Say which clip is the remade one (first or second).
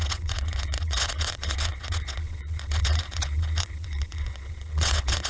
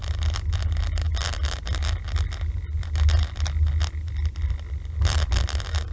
first